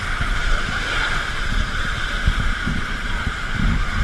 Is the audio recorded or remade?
remade